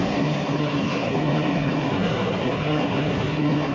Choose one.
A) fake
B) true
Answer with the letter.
A